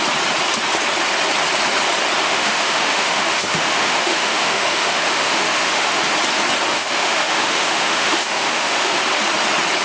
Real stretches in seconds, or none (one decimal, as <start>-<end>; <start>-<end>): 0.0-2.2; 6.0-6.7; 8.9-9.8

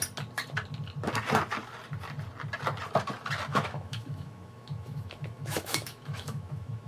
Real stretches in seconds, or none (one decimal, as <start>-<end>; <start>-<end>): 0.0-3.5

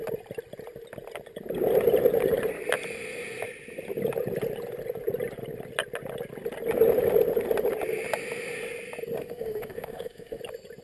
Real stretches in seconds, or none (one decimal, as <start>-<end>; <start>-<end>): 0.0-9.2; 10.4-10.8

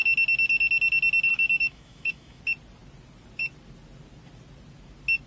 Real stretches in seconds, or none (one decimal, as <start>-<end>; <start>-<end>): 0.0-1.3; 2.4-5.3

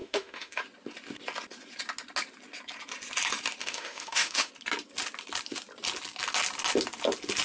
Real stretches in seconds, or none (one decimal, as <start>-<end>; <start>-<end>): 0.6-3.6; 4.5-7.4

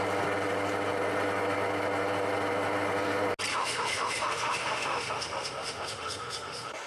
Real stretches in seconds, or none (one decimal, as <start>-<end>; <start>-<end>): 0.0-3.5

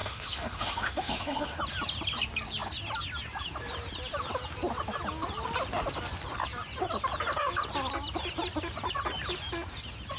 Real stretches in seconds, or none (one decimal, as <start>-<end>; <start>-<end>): 1.6-10.2

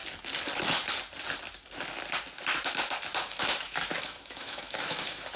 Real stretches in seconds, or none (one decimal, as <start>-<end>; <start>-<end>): 0.0-3.2